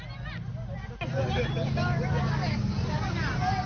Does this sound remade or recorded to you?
recorded